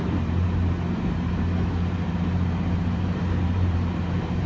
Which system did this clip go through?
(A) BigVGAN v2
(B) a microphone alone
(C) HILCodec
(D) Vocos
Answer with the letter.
A